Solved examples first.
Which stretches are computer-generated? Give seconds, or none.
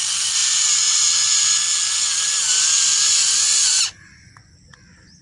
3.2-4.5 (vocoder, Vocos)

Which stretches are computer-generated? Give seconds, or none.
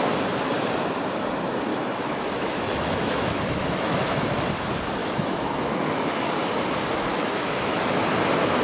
1.7-4.5 (autoencoder, DAC-VAE); 5.0-6.3; 7.1-8.0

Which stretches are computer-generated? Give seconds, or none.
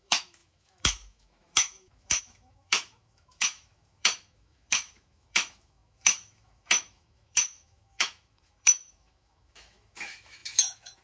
0.0-11.0 (autoencoder, DAC-VAE)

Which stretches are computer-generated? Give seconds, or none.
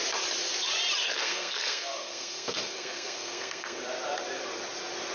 1.0-3.8 (codec, SNAC)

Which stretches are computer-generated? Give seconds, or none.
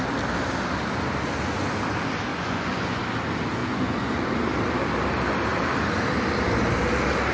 2.3-3.0 (vocoder, Vocos); 3.6-4.3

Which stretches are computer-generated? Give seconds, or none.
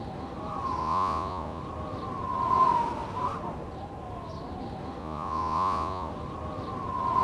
0.8-1.6 (vocoder, Vocos); 5.0-6.1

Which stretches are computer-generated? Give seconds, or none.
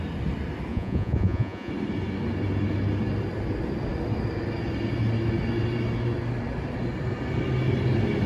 0.7-1.7 (vocoder, Vocos)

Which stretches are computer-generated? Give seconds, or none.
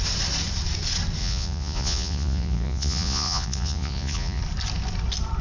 1.2-4.4 (vocoder, Vocos)